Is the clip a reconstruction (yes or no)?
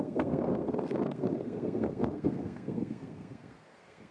yes